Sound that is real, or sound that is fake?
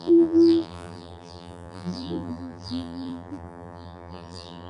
fake